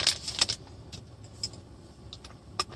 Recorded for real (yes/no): yes